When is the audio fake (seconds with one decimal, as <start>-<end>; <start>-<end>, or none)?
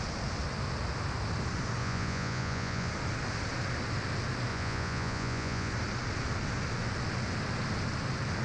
1.8-2.9; 4.5-5.7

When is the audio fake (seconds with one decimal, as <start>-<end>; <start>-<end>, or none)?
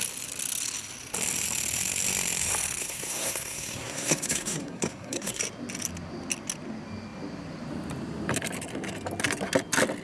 2.8-5.4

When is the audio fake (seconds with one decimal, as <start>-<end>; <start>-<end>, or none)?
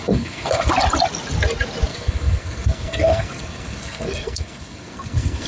0.0-0.7; 1.9-5.5